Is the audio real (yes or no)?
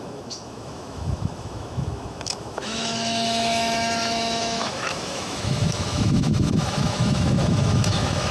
no